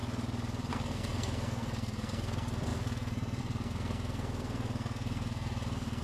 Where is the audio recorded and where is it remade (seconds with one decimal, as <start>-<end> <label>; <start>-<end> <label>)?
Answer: 0.0-0.7 recorded; 0.7-6.0 remade